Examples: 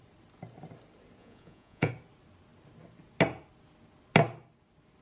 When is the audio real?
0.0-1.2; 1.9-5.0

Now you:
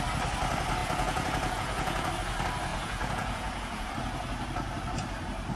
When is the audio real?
0.0-0.8; 2.1-2.7; 3.9-5.6

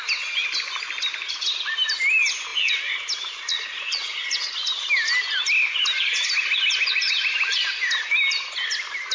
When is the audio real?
0.0-2.5; 3.0-3.5; 4.5-9.1

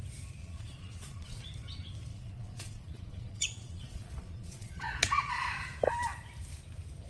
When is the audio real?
0.0-0.4; 1.4-2.1; 5.3-7.1

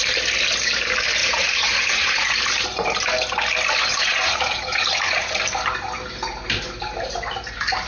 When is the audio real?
0.0-1.2; 2.4-3.9; 5.4-7.9

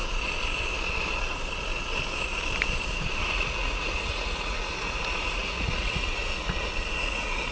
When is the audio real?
0.0-3.2